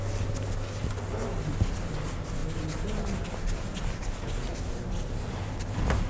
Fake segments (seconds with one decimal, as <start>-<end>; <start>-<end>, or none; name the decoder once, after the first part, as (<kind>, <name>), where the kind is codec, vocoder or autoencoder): none